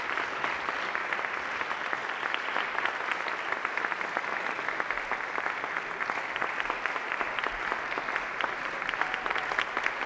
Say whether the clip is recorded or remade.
recorded